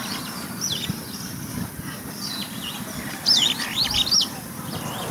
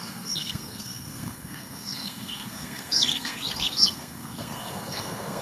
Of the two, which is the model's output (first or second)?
second